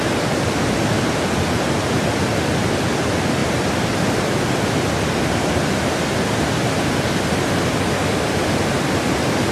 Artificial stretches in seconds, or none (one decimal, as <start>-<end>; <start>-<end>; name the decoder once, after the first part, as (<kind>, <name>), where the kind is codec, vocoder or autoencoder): none